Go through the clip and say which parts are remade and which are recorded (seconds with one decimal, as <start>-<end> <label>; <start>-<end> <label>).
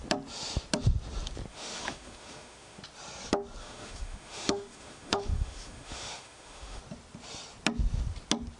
0.0-1.5 recorded; 1.5-2.8 remade; 2.8-3.6 recorded; 3.6-6.8 remade; 6.8-8.6 recorded